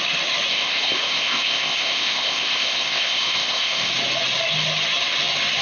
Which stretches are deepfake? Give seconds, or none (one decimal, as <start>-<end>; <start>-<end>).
0.5-3.9